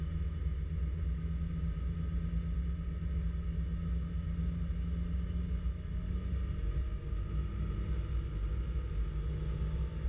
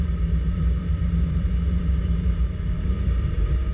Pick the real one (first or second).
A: first